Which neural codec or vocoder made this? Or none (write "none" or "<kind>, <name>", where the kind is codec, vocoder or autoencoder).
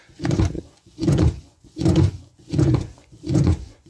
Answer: vocoder, Vocos